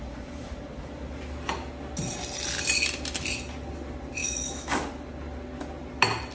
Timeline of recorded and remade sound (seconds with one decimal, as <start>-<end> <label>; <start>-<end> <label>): 0.0-4.2 recorded; 4.2-4.7 remade; 4.7-6.3 recorded